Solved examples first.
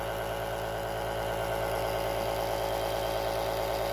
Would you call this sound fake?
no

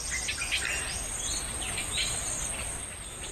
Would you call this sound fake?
no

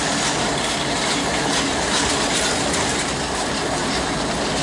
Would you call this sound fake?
yes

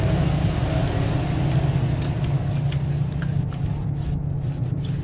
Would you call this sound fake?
no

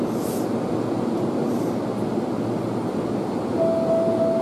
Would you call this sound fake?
no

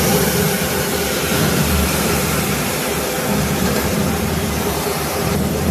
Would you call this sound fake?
yes